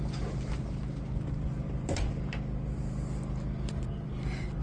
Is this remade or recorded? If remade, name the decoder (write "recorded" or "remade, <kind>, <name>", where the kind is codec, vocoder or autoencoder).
recorded